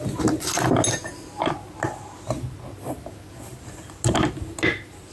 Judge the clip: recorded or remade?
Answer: recorded